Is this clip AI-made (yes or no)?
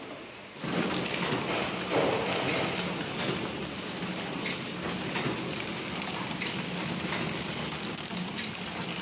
no